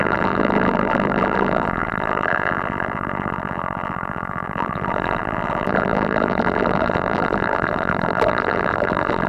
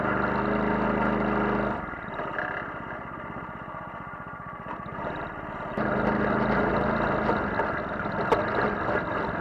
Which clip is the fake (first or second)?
first